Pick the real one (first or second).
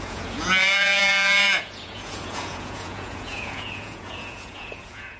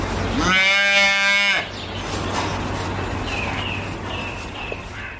second